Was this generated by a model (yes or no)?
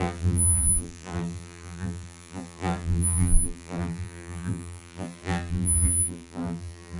yes